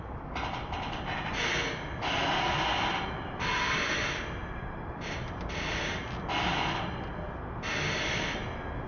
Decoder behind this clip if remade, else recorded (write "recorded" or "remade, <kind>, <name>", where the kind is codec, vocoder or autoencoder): recorded